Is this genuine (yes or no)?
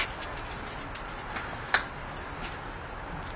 yes